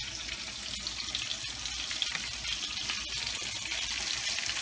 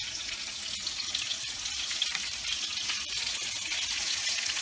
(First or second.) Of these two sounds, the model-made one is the second